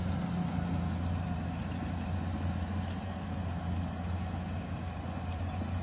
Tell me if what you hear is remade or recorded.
recorded